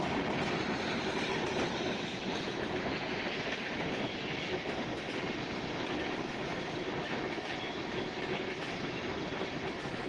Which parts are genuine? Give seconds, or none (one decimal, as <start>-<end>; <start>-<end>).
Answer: 0.0-3.6; 4.7-7.0; 8.6-10.1